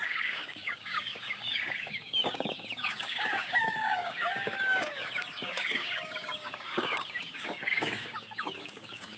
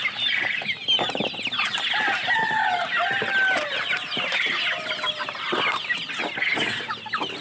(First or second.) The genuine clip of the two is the second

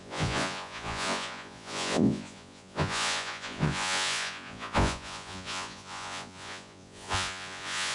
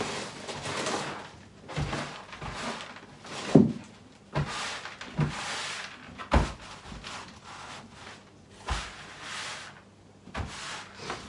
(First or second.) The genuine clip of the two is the second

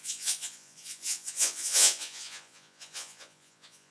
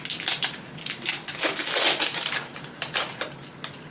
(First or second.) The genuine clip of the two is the second